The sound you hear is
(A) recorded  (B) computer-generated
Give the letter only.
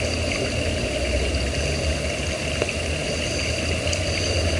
A